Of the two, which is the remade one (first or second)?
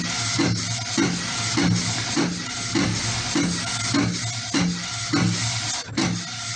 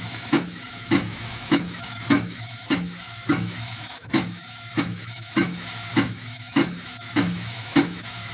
second